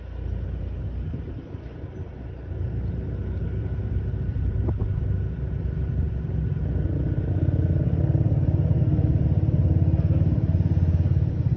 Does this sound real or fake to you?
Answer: real